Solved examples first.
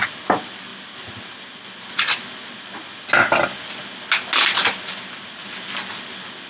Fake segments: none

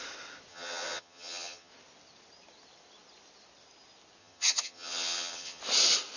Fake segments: 0.5-1.7; 4.2-5.6